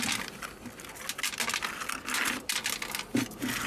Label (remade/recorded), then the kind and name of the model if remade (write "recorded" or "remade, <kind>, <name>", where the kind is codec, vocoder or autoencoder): recorded